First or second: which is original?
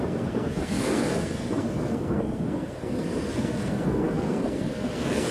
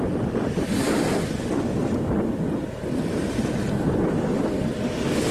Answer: second